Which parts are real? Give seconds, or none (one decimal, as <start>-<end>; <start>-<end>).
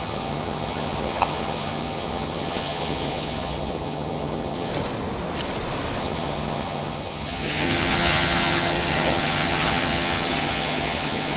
4.7-6.0